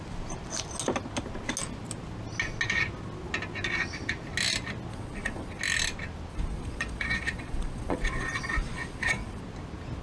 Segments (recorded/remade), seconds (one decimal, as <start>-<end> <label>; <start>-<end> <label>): 0.0-4.9 recorded; 4.9-5.6 remade; 5.6-6.3 recorded; 6.3-9.4 remade; 9.4-10.0 recorded